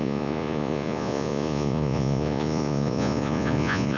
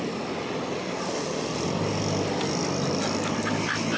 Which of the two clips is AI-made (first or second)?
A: first